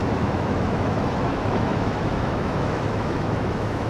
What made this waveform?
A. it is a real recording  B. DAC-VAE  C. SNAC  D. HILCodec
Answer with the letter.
B